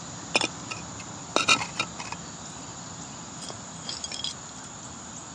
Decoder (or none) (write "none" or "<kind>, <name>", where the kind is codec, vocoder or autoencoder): none